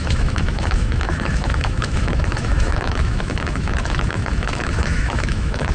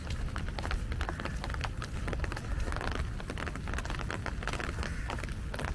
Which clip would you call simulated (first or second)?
first